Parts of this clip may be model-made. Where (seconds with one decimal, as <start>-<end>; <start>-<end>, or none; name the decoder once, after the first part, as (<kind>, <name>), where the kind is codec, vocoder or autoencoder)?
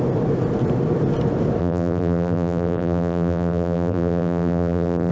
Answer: 1.6-5.1 (vocoder, BigVGAN v2)